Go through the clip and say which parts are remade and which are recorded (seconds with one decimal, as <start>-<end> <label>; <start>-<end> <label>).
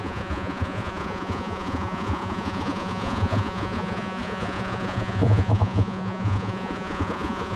0.0-7.6 remade